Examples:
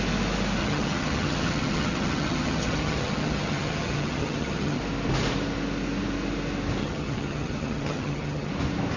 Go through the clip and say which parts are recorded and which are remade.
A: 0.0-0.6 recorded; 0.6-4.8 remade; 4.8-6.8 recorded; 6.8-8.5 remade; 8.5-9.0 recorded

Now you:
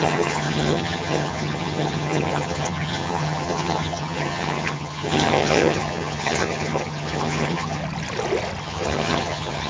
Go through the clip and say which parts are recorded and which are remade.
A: 0.0-7.8 remade; 7.8-8.6 recorded; 8.6-9.7 remade

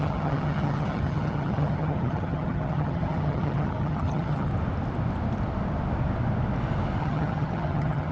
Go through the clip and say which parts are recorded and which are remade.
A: 0.0-4.5 remade; 4.5-7.0 recorded; 7.0-8.1 remade

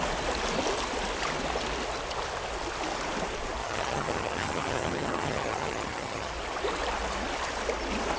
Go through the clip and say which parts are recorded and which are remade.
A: 0.0-3.6 recorded; 3.6-6.3 remade; 6.3-8.2 recorded

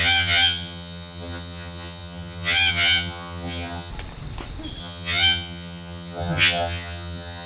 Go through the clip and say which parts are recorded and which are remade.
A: 0.0-3.9 remade; 3.9-4.8 recorded; 4.8-7.5 remade